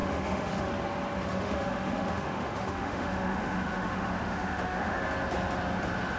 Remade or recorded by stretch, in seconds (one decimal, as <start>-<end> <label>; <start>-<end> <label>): 0.0-0.7 remade; 0.7-1.3 recorded; 1.3-5.0 remade; 5.0-6.2 recorded